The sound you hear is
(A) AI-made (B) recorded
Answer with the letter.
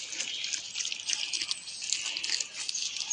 B